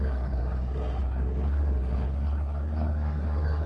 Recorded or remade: remade